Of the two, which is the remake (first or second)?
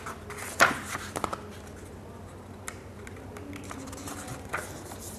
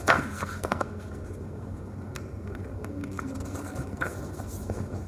second